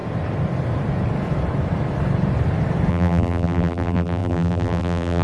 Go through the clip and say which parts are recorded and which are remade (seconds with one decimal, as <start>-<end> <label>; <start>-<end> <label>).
0.0-2.9 recorded; 2.9-5.2 remade